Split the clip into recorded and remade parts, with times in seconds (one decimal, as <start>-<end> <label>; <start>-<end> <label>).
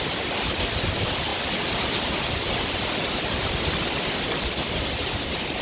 0.0-5.6 recorded